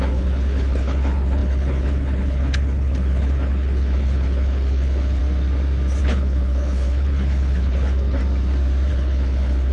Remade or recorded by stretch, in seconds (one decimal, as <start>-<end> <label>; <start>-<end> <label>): 0.0-5.2 remade; 5.2-6.0 recorded; 6.0-8.2 remade; 8.2-8.9 recorded; 8.9-9.7 remade